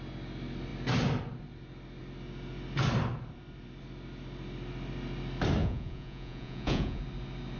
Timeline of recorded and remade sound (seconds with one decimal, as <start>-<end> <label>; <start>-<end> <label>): 0.0-5.6 recorded; 5.6-7.0 remade; 7.0-7.6 recorded